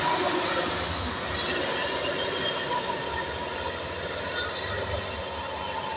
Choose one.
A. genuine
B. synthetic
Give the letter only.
A